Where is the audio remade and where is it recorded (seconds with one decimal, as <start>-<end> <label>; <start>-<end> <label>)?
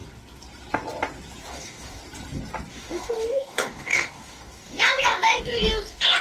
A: 0.0-1.5 recorded; 1.5-2.0 remade; 2.0-2.7 recorded; 2.7-6.2 remade